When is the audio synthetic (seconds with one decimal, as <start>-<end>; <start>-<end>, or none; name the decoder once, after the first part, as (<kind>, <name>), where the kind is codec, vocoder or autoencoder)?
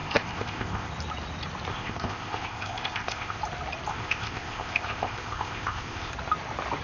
0.0-0.9 (codec, ZipCodec); 1.7-3.4; 3.9-6.1